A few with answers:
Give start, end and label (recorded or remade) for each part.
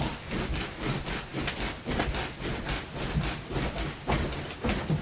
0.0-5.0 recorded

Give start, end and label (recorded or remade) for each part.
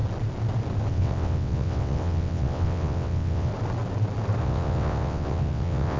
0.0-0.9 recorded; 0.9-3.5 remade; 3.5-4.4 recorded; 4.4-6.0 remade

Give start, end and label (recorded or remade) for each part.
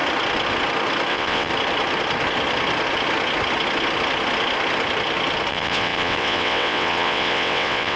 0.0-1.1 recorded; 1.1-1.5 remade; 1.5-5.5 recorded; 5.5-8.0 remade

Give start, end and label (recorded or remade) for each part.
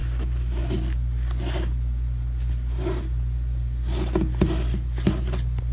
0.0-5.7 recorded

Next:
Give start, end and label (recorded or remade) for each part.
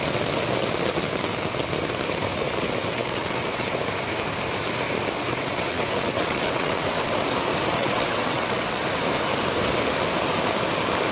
0.0-2.3 recorded; 2.3-3.8 remade; 3.8-5.3 recorded; 5.3-7.1 remade; 7.1-7.8 recorded; 7.8-8.8 remade; 8.8-11.1 recorded